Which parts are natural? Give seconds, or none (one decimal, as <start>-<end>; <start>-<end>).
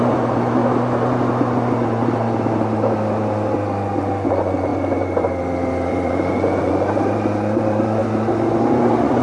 0.6-4.3; 4.7-5.9; 8.0-8.6